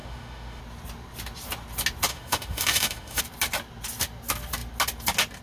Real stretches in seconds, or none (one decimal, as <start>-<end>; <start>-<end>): 0.6-2.1; 3.2-5.4